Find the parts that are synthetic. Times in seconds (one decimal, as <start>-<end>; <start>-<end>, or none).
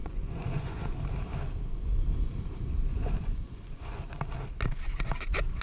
0.0-0.9; 2.9-4.2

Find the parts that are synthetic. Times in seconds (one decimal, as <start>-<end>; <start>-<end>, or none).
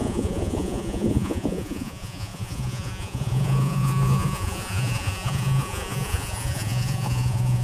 0.0-7.6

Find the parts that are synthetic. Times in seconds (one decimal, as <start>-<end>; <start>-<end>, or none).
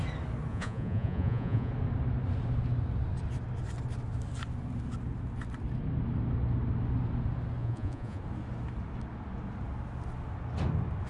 0.5-1.7; 7.6-8.2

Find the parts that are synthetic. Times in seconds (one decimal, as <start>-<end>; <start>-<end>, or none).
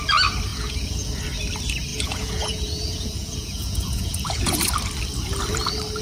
0.5-1.1; 1.9-4.7